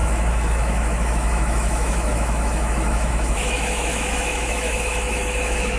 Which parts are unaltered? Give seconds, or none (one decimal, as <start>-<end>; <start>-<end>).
none